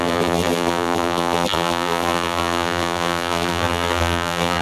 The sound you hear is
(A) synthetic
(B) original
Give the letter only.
A